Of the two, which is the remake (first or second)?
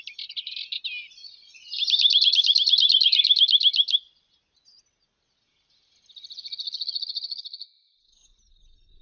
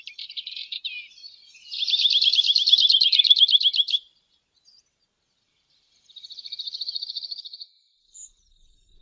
second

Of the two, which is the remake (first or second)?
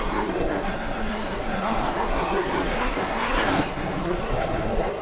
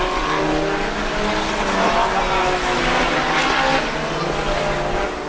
first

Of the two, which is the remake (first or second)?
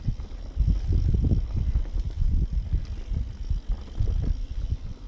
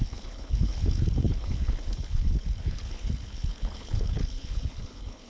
second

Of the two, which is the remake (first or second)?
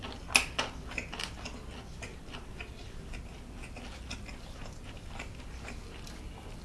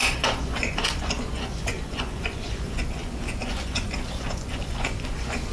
second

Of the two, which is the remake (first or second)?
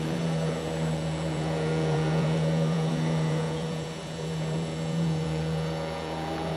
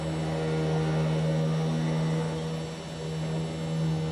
first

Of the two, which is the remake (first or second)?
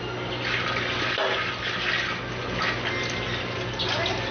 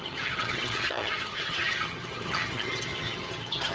second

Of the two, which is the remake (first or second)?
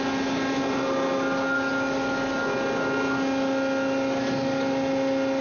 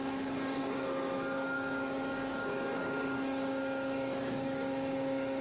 second